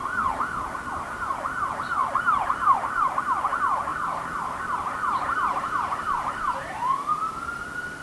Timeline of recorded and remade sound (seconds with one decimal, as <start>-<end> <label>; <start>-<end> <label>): 0.0-2.0 recorded; 2.0-3.1 remade; 3.1-3.9 recorded; 3.9-7.4 remade; 7.4-8.0 recorded